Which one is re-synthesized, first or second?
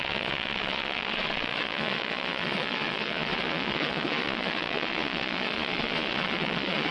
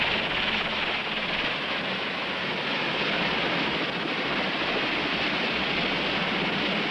first